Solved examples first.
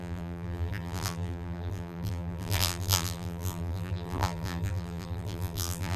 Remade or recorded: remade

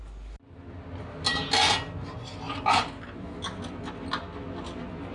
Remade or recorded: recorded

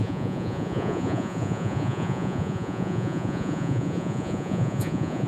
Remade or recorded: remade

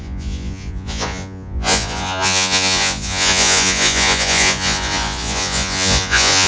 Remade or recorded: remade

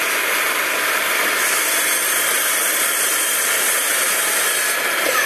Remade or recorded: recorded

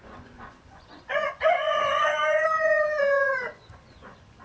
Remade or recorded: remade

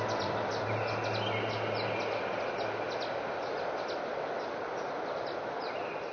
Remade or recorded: recorded